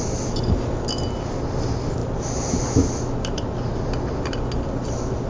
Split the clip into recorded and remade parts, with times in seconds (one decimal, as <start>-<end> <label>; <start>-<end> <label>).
0.0-5.3 recorded